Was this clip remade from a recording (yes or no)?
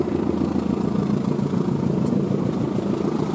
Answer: no